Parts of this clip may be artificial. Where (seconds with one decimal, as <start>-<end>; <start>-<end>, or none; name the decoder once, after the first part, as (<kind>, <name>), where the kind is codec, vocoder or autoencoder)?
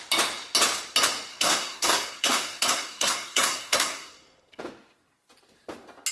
1.3-4.6 (codec, SNAC)